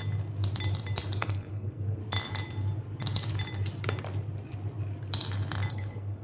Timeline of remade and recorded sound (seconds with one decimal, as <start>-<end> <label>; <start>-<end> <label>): 0.0-1.2 recorded; 1.2-2.0 remade; 2.0-5.7 recorded; 5.7-6.2 remade